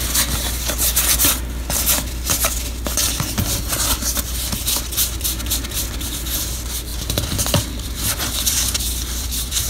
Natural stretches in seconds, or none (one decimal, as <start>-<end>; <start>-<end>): 0.0-6.9